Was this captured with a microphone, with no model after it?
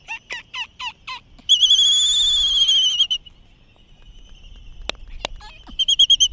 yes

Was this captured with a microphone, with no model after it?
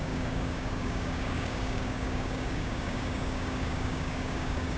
no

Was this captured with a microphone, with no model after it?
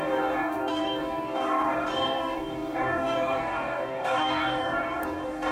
no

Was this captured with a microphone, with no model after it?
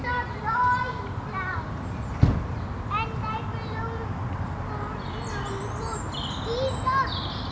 yes